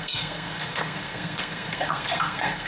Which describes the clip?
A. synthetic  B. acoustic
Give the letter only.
A